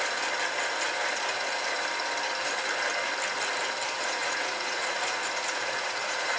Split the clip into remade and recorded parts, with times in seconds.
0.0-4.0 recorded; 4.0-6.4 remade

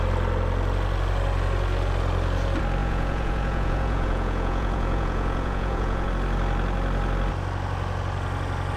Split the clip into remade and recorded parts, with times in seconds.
0.0-2.8 recorded; 2.8-6.1 remade; 6.1-8.8 recorded